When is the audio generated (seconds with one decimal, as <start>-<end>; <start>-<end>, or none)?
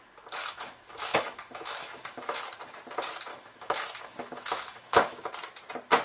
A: 0.4-2.4; 3.3-5.3